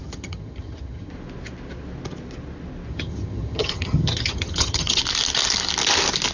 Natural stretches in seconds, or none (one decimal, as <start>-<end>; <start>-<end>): 1.1-2.9; 5.0-6.3